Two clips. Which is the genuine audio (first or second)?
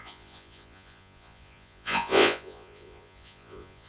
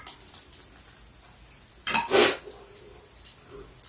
second